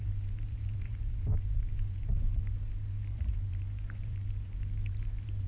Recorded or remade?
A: remade